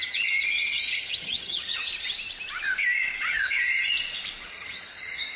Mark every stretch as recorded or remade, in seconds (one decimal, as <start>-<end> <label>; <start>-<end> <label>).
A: 0.0-1.9 remade; 1.9-3.2 recorded; 3.2-3.9 remade; 3.9-4.5 recorded; 4.5-5.4 remade

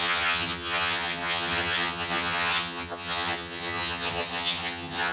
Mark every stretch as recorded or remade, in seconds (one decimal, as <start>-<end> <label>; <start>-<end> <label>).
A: 0.0-5.1 remade